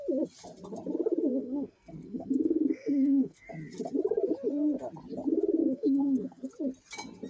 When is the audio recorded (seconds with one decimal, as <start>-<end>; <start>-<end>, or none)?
0.0-1.3; 3.5-5.6; 6.5-7.3